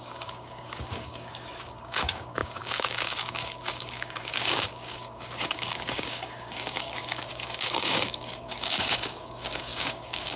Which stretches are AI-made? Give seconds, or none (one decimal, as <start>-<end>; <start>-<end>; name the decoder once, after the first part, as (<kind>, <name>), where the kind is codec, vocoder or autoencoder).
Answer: 0.0-10.4 (codec, DAC)